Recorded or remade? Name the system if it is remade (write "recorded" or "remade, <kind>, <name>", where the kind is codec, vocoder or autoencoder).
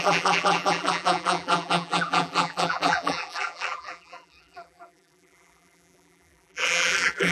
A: remade, vocoder, BigVGAN v2